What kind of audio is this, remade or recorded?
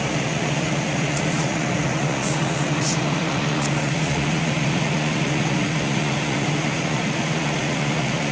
remade